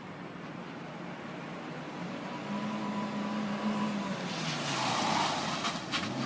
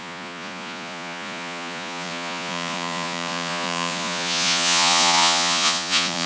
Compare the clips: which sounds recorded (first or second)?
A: first